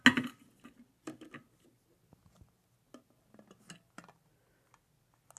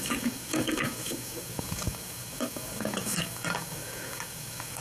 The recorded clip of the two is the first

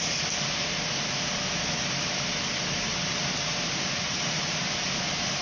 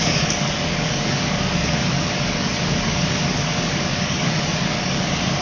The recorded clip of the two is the first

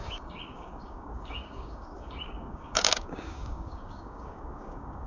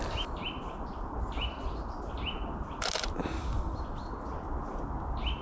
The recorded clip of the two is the second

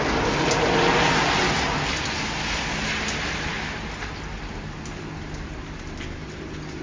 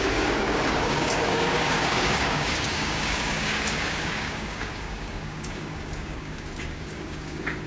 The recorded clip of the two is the first